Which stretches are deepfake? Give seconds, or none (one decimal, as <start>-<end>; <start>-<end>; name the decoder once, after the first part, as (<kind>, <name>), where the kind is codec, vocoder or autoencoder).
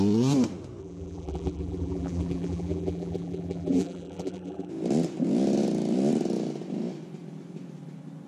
0.8-4.7 (vocoder, BigVGAN v2)